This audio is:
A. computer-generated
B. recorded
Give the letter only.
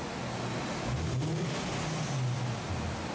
B